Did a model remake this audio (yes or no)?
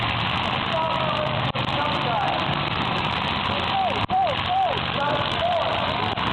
no